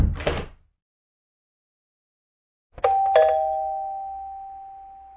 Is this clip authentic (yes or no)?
yes